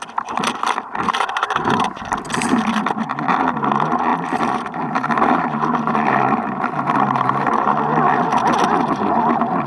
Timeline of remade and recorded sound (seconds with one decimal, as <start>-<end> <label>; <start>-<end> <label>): 0.0-4.1 recorded; 4.1-7.7 remade; 7.7-9.7 recorded